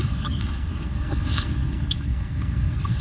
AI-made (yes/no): yes